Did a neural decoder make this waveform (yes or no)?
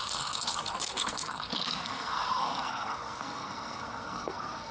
yes